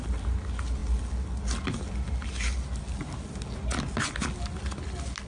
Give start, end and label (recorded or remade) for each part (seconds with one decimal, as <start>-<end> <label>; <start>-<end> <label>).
0.0-5.3 recorded